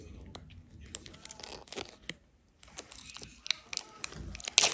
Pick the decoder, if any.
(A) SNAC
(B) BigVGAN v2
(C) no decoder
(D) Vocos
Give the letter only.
C